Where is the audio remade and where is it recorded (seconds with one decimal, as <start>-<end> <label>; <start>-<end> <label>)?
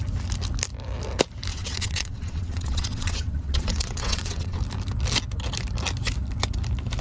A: 0.0-1.5 recorded; 1.5-4.6 remade; 4.6-7.0 recorded